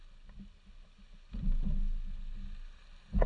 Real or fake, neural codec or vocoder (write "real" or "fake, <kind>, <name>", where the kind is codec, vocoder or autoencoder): real